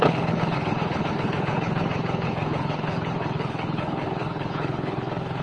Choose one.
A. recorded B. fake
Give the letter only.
B